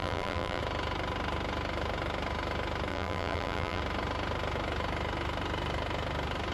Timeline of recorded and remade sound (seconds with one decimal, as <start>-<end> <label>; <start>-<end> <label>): 0.0-0.6 remade; 0.6-2.9 recorded; 2.9-3.8 remade; 3.8-6.5 recorded